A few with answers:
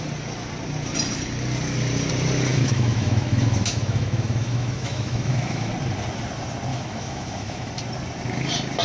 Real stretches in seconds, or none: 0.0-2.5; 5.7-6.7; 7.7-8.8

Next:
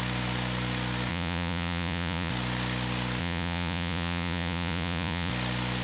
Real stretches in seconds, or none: 0.0-1.1; 2.3-3.2; 5.3-5.8